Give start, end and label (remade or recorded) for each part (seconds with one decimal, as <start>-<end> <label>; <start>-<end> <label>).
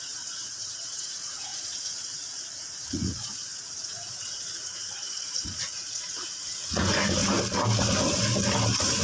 0.0-7.2 remade; 7.2-9.0 recorded